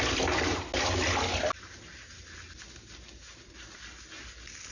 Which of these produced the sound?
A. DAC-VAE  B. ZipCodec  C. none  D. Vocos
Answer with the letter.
C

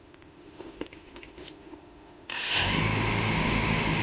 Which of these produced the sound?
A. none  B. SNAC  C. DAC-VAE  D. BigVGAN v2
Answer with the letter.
C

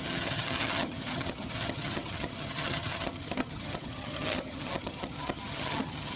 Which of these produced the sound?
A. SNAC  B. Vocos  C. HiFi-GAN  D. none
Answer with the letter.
C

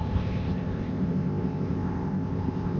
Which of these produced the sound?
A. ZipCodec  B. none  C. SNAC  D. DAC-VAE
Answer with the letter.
A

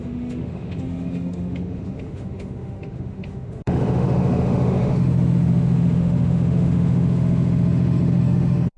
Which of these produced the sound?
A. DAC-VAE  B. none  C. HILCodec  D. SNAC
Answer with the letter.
A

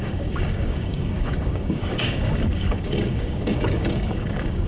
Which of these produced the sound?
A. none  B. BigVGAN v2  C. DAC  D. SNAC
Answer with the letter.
C